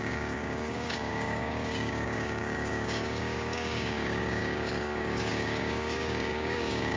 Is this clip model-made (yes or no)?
yes